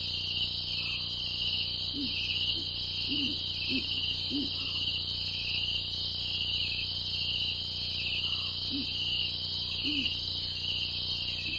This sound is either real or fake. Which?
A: fake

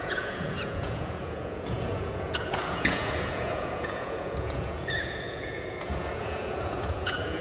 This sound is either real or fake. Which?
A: fake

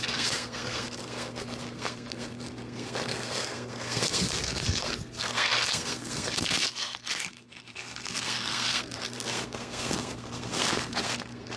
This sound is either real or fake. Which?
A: fake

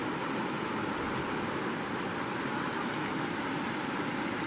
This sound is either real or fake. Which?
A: real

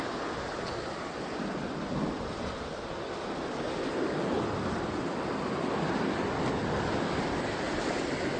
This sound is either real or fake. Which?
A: real